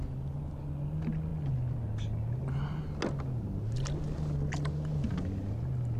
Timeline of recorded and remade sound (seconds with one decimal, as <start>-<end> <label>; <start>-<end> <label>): 0.0-6.0 recorded